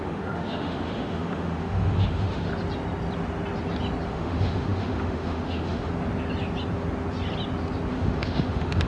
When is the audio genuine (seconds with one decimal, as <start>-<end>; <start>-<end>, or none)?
2.5-4.1; 5.9-7.9